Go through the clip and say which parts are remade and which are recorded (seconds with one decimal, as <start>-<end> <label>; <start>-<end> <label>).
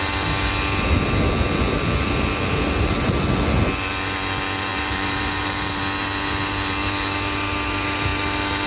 0.0-4.7 recorded; 4.7-5.8 remade; 5.8-8.7 recorded